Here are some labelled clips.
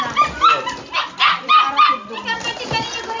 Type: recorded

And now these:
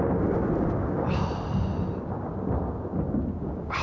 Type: recorded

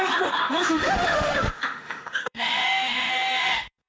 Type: remade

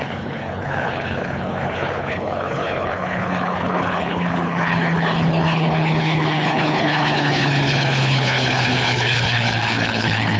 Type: remade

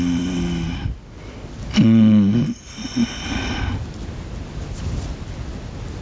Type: recorded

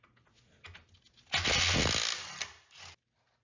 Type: recorded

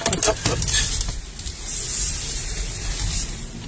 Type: recorded